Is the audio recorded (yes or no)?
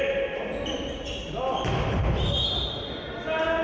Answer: yes